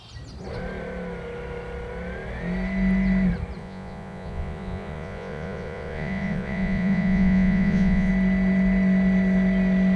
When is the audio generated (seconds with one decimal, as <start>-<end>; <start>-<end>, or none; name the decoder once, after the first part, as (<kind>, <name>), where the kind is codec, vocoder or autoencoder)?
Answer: 3.6-8.1 (vocoder, Vocos)

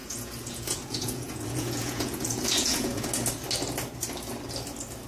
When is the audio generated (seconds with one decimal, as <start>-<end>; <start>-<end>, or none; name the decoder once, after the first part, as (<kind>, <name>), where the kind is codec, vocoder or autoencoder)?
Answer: 0.0-3.1 (vocoder, Vocos)